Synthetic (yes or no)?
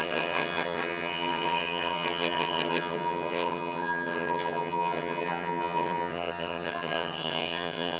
yes